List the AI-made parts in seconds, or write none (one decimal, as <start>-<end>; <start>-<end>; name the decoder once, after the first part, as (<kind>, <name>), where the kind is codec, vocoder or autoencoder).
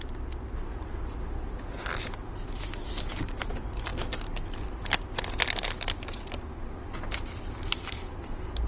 none